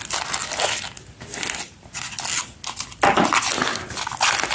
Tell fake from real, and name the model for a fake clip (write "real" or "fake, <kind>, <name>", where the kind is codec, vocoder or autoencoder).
real